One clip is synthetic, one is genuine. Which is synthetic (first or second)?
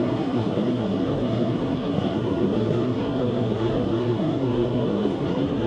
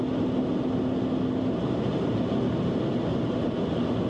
first